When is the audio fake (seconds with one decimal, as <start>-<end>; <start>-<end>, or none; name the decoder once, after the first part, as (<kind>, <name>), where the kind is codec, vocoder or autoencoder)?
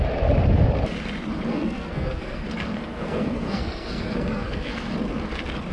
1.5-4.9 (codec, SNAC)